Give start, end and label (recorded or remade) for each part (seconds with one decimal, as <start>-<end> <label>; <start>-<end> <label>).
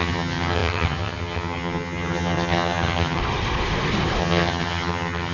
0.0-3.2 remade; 3.2-4.2 recorded; 4.2-5.3 remade